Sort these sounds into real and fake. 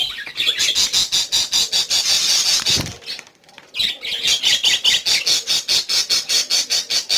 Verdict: real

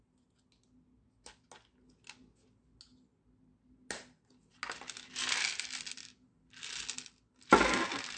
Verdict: real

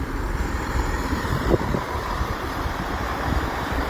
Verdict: fake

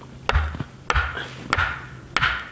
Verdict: real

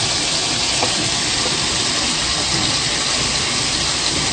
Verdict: real